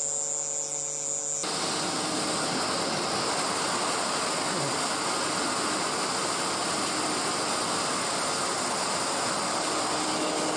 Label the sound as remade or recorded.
recorded